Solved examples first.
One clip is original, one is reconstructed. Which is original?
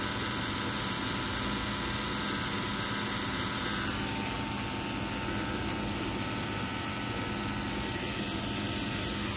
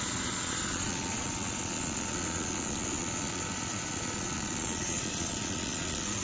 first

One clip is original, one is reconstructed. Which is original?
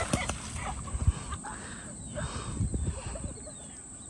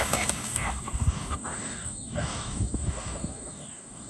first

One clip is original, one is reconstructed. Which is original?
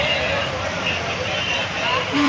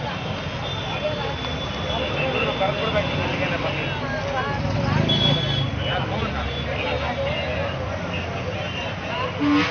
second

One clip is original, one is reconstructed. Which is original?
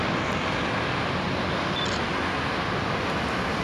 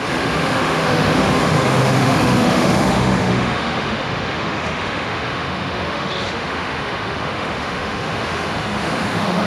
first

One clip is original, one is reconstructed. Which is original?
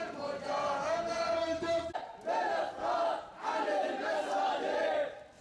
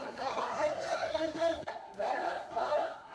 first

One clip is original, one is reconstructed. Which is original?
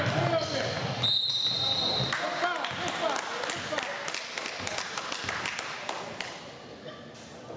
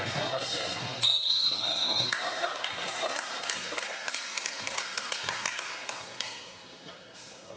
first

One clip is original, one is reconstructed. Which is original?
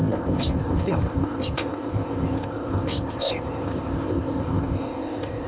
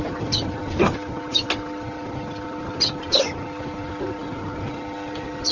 second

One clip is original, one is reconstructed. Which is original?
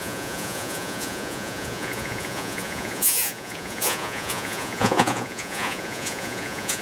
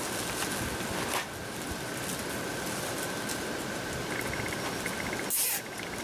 second